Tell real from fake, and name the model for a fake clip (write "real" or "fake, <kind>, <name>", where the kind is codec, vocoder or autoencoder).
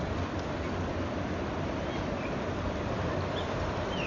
real